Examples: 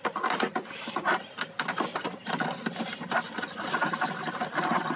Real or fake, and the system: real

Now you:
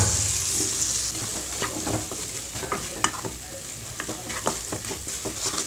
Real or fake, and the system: real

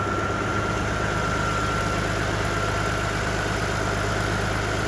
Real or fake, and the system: real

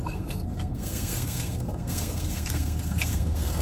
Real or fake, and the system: fake, codec, SNAC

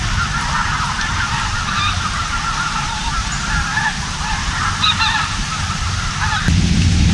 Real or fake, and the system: fake, vocoder, BigVGAN v2